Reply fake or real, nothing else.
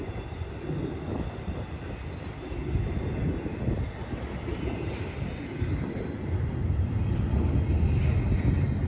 real